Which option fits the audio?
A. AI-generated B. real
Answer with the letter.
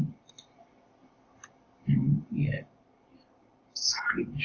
B